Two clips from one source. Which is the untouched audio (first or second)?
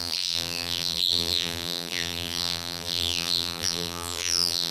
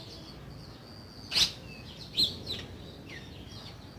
second